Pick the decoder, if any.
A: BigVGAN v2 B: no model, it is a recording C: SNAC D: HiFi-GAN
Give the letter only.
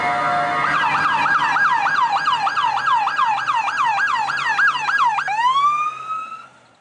B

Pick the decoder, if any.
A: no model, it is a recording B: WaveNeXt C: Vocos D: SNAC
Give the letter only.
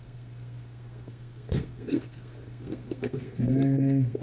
D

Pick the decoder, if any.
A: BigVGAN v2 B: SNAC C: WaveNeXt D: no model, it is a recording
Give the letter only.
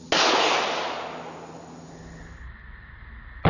D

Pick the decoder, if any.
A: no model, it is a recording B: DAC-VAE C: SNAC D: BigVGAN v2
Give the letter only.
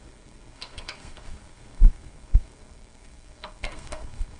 C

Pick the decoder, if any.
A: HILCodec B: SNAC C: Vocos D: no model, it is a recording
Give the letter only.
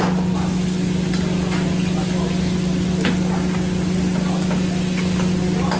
D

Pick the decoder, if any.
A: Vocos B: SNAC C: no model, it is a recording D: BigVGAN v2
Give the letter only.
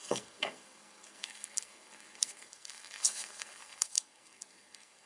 B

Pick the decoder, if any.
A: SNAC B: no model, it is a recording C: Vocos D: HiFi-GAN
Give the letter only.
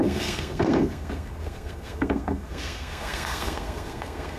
A